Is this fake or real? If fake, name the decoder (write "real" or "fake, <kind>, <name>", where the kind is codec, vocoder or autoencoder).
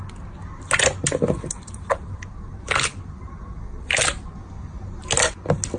real